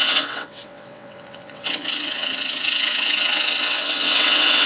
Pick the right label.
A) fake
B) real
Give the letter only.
A